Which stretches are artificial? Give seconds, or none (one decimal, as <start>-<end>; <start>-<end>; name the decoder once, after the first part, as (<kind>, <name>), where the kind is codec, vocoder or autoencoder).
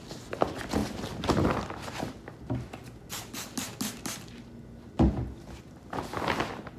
none